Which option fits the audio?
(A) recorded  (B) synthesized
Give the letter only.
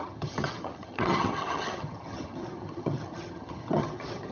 B